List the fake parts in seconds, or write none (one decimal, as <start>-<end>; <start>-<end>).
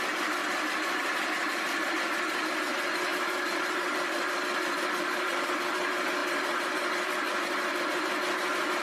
0.4-1.9; 3.1-5.7; 6.2-7.9